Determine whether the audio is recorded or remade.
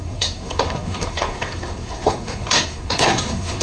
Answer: remade